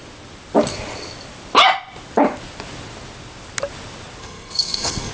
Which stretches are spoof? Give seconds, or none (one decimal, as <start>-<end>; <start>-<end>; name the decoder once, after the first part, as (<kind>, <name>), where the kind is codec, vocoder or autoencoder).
4.2-5.1 (codec, SNAC)